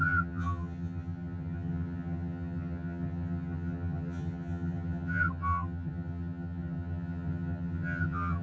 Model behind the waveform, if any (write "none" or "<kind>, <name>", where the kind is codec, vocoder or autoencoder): vocoder, HiFi-GAN